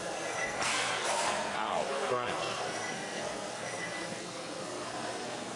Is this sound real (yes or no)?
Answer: no